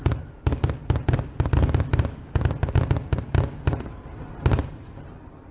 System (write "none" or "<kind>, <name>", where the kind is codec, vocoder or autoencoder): none